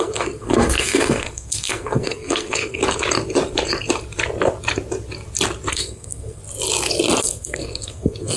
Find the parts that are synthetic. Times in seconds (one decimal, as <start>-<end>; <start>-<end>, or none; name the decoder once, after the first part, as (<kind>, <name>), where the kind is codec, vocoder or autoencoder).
0.0-2.8 (codec, SNAC); 5.7-6.4; 7.2-8.4